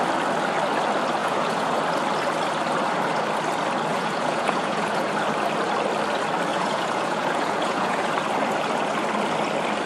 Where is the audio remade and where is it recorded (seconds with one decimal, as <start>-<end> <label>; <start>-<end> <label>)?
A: 0.0-1.2 recorded; 1.2-1.8 remade; 1.8-3.9 recorded; 3.9-5.1 remade; 5.1-6.5 recorded; 6.5-8.1 remade; 8.1-9.9 recorded